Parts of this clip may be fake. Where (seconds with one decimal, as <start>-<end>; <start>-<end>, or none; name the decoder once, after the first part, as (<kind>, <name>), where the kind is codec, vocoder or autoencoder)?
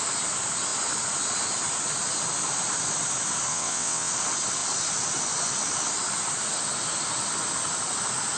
3.5-4.1 (vocoder, WaveNeXt)